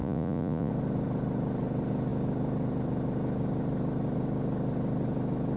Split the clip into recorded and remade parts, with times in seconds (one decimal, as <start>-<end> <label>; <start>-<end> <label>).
0.0-0.7 remade; 0.7-5.6 recorded